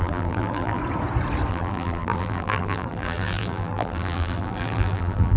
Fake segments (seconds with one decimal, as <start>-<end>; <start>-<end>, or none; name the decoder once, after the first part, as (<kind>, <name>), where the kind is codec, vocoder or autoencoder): 0.0-0.8 (vocoder, BigVGAN v2); 1.5-5.4